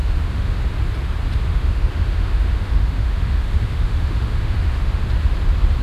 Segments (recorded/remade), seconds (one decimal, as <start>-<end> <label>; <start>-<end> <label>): 0.0-0.6 remade; 0.6-1.5 recorded; 1.5-5.0 remade; 5.0-5.8 recorded